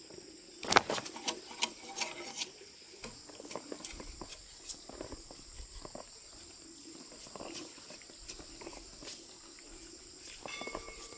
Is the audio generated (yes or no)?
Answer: no